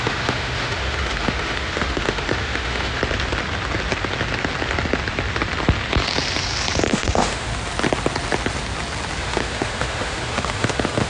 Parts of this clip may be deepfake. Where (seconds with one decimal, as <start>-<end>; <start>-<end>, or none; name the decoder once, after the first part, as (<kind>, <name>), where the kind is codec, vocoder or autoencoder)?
0.0-3.0 (autoencoder, DAC-VAE); 6.9-7.5; 9.2-11.1